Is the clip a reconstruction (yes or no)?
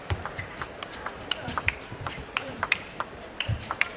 yes